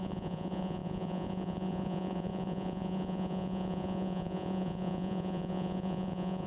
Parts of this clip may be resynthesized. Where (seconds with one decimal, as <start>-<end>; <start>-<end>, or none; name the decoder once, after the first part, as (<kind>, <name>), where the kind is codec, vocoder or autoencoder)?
0.0-6.5 (vocoder, Vocos)